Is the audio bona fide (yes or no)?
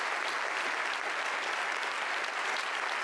yes